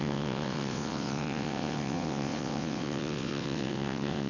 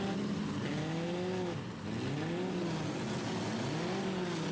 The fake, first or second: first